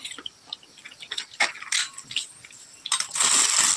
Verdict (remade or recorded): recorded